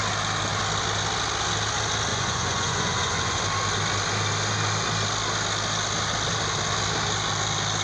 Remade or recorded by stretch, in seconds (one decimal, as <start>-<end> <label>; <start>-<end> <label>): 0.0-2.1 recorded; 2.1-3.4 remade; 3.4-7.8 recorded